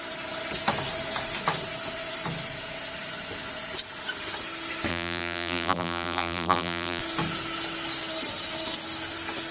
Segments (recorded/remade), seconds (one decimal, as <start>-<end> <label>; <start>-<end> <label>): 0.0-4.9 recorded; 4.9-7.0 remade; 7.0-9.5 recorded